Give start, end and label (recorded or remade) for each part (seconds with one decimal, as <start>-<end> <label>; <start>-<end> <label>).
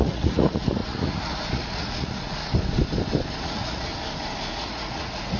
0.0-2.4 remade; 2.4-3.4 recorded; 3.4-3.9 remade; 3.9-4.5 recorded; 4.5-5.4 remade